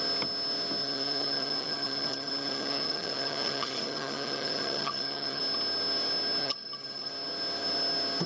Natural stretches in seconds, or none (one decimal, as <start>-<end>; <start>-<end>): 0.0-0.8; 5.4-6.4; 7.1-8.3